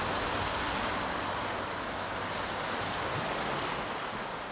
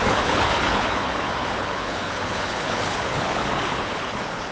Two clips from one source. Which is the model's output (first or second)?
second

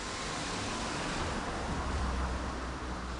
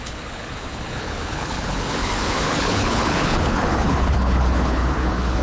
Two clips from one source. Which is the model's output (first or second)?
second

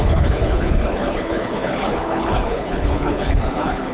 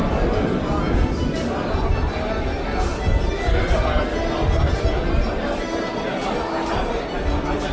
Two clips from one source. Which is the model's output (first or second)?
first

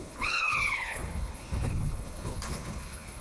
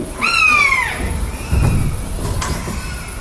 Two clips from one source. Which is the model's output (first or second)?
first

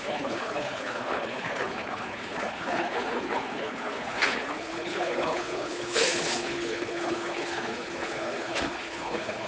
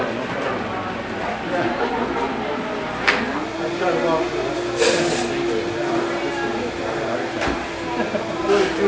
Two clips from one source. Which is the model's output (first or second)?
first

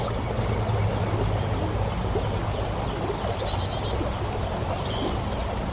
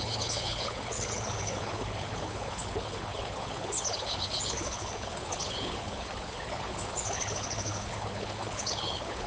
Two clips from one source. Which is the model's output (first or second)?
second